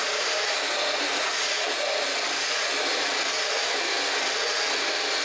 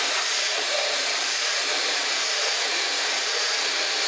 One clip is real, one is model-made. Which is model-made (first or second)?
second